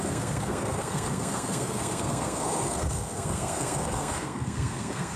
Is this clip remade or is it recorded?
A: remade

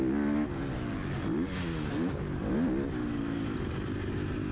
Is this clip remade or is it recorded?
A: recorded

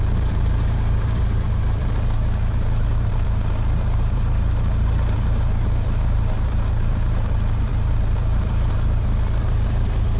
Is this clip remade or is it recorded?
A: remade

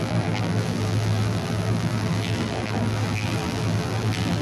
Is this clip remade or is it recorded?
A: remade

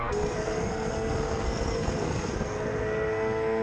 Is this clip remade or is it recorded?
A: remade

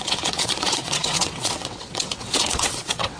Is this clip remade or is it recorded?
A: remade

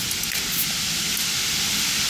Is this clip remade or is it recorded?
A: recorded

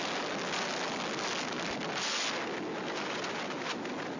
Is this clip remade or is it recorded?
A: recorded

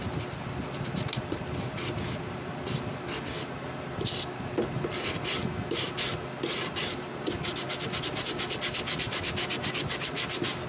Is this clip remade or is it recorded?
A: recorded